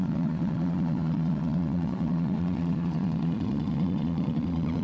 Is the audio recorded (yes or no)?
no